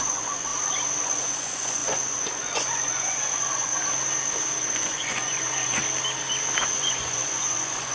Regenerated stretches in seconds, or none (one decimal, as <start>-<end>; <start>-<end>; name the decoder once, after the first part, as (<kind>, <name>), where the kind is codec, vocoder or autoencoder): 0.0-0.5 (vocoder, Vocos); 1.0-3.7; 4.6-5.8; 6.7-7.9